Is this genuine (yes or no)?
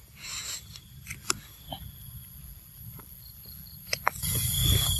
yes